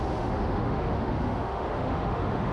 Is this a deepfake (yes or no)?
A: yes